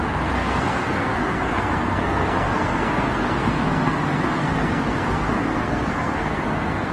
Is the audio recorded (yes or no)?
no